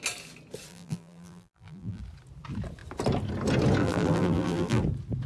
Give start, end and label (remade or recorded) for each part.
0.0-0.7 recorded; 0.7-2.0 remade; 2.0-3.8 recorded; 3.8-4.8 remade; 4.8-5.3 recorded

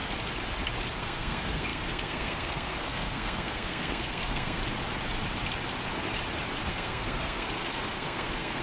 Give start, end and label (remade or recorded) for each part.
0.0-1.0 recorded; 1.0-4.6 remade; 4.6-6.7 recorded; 6.7-8.6 remade

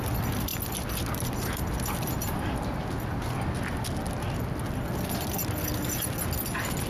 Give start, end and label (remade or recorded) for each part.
0.0-6.9 recorded